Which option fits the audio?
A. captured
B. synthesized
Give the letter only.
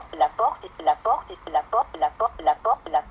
A